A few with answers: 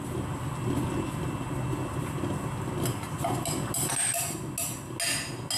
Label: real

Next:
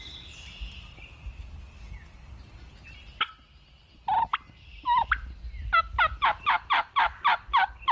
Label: real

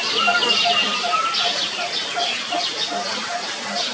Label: real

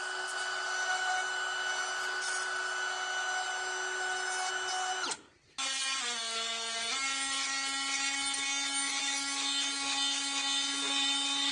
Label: real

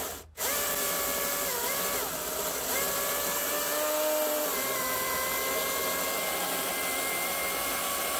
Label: real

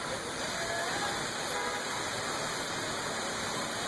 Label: real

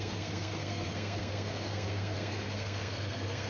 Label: fake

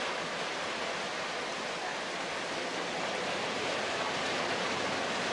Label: real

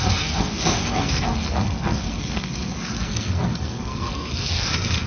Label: fake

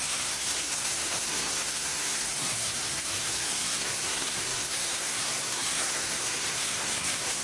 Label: fake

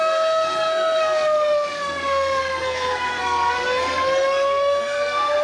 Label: fake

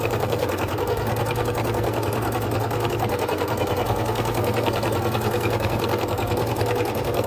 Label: fake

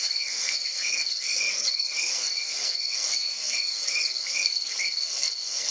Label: fake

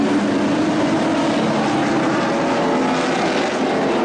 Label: real